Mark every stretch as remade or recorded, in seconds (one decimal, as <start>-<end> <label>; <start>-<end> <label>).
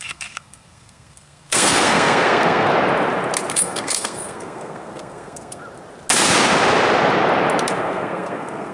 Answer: 0.0-2.7 remade; 2.7-3.5 recorded; 3.5-5.6 remade; 5.6-7.8 recorded; 7.8-8.7 remade